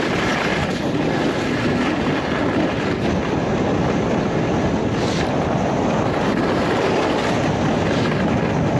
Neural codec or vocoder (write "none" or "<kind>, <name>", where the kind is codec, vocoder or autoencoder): none